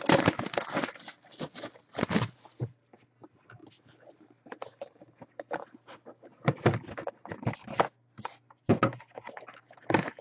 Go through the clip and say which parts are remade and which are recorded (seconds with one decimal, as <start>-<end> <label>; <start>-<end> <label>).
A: 0.0-10.2 recorded